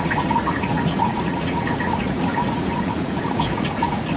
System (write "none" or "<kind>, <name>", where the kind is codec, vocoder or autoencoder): vocoder, Vocos